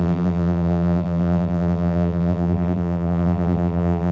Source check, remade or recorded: remade